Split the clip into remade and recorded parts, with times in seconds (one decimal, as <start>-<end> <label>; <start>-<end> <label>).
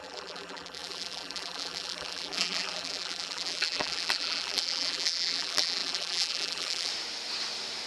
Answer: 0.0-6.9 remade; 6.9-7.9 recorded